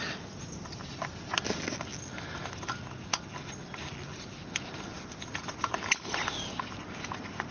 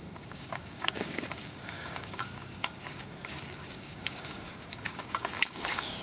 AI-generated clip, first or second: second